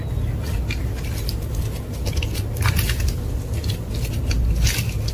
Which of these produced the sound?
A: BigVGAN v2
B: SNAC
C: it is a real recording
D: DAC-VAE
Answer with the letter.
C